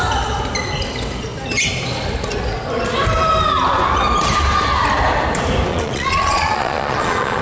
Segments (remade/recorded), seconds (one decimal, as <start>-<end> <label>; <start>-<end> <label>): 0.0-5.7 recorded; 5.7-7.4 remade

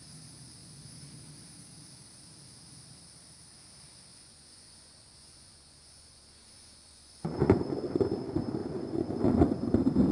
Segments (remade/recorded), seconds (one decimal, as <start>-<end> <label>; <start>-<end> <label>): 0.0-0.6 recorded; 0.6-1.1 remade; 1.1-4.1 recorded; 4.1-8.0 remade; 8.0-8.6 recorded; 8.6-9.6 remade; 9.6-10.1 recorded

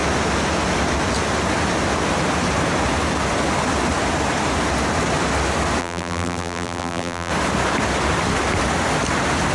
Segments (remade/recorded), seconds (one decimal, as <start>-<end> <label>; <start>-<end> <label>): 0.0-5.8 recorded; 5.8-7.3 remade; 7.3-9.5 recorded